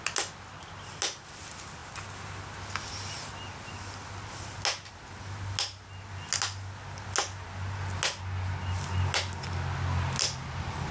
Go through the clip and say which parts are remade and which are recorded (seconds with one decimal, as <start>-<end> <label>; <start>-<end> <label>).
0.0-10.9 recorded